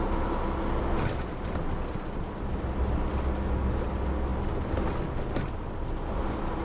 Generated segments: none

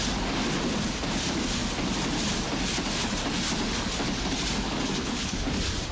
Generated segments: 5.0-5.5

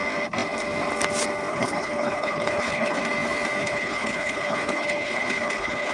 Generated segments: 1.5-3.0; 3.6-5.9